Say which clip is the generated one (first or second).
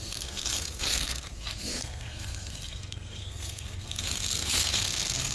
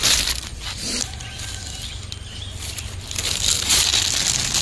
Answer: first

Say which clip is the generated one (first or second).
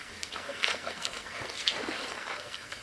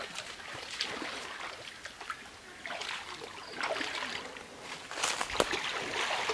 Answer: first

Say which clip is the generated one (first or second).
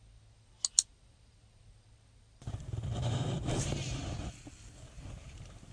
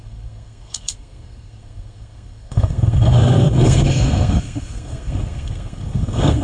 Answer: second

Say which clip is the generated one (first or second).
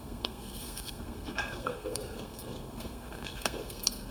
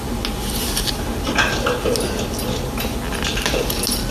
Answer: first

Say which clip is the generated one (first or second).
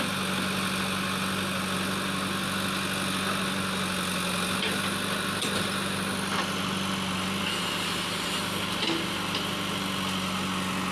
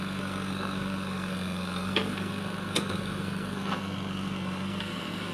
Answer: second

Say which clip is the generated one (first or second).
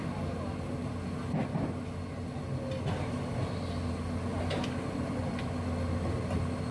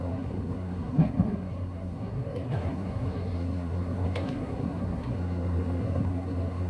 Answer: second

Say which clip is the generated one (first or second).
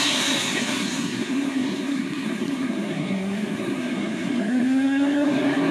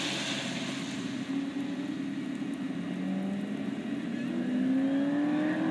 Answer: first